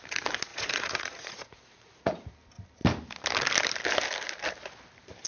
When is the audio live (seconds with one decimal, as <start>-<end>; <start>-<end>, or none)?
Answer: 0.0-0.5; 2.3-5.3